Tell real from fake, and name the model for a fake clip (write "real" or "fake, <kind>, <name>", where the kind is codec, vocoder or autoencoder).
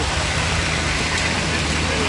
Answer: fake, vocoder, BigVGAN v2